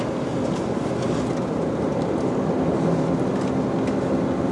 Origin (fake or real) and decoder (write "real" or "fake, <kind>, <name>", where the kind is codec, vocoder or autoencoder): real